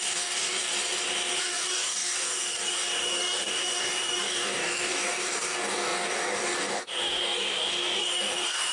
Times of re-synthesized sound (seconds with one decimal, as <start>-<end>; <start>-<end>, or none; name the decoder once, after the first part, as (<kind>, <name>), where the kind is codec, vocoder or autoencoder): 0.0-0.7 (codec, DAC); 1.4-8.7